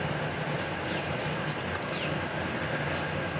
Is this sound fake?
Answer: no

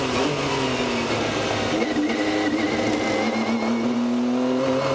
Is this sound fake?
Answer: no